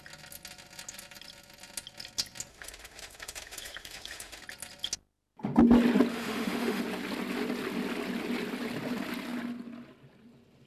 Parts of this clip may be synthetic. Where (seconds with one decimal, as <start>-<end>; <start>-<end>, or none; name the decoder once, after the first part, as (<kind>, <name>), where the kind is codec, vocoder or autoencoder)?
2.5-4.4 (autoencoder, DAC-VAE); 6.1-6.8

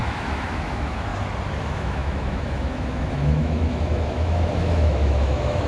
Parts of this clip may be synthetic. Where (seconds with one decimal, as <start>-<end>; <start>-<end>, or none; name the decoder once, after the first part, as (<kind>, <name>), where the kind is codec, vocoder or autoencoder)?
0.0-1.1 (autoencoder, DAC-VAE); 1.6-5.7